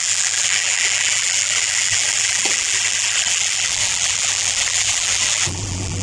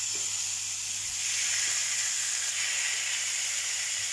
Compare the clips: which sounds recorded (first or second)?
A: second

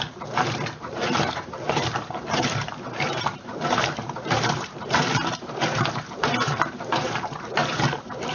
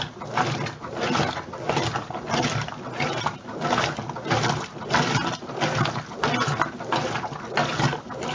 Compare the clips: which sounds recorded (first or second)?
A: second